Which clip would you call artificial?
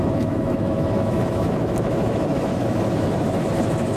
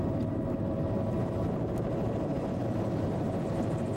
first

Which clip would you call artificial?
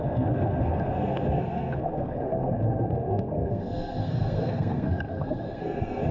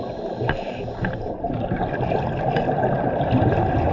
first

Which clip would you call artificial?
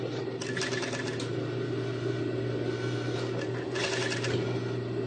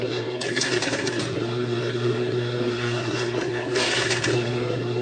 second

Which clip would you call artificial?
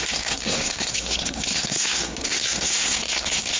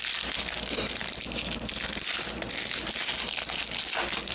first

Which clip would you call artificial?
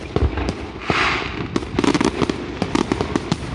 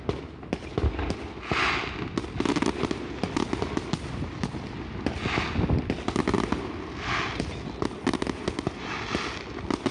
first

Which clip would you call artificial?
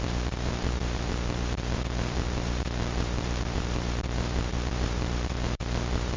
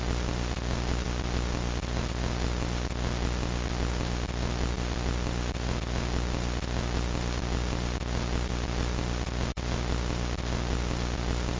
first